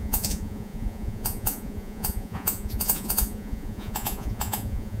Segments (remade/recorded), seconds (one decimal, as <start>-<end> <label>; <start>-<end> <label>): 0.0-5.0 remade

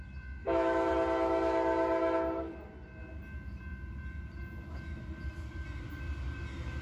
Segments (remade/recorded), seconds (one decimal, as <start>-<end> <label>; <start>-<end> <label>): 0.0-0.4 recorded; 0.4-0.9 remade; 0.9-6.8 recorded

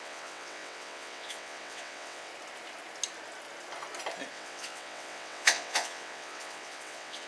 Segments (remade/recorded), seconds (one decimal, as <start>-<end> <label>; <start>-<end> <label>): 0.0-2.3 remade; 2.3-4.3 recorded; 4.3-7.3 remade